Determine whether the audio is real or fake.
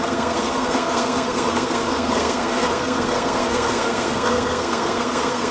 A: fake